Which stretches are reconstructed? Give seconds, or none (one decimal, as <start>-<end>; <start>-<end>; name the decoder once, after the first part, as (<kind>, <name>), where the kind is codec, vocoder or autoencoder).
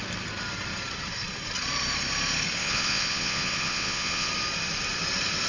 2.6-4.3 (vocoder, Vocos)